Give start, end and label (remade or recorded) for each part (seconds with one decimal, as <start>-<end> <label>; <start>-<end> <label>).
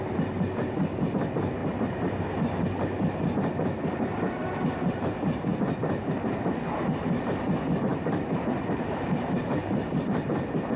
0.0-1.6 recorded; 1.6-2.2 remade; 2.2-7.9 recorded; 7.9-10.3 remade; 10.3-10.8 recorded